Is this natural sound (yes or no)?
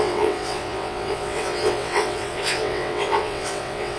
no